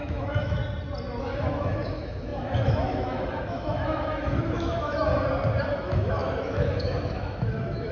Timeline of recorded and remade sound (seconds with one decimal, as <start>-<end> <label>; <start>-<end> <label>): 0.0-0.6 remade; 0.6-1.2 recorded; 1.2-5.1 remade; 5.1-5.7 recorded; 5.7-7.9 remade